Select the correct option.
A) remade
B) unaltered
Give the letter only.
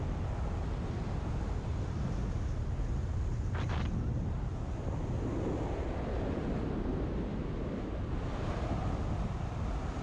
B